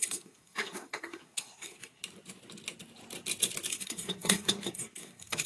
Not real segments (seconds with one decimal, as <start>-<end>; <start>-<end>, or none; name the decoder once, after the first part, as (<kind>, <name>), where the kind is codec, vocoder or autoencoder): 0.0-2.0 (codec, SNAC); 3.7-5.5